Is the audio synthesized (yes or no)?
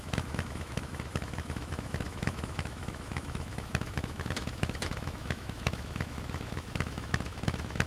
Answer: yes